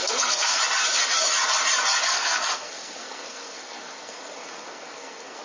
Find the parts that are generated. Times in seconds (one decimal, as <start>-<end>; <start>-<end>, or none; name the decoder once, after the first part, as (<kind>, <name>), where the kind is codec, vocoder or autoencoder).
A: 0.0-0.6 (codec, SNAC); 2.0-5.4